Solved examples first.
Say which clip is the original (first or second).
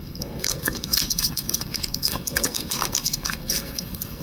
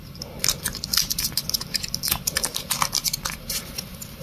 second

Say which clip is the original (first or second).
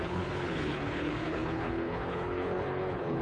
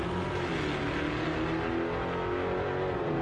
second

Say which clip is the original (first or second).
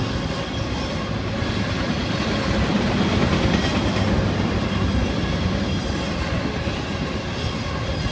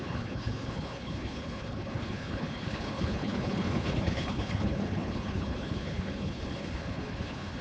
first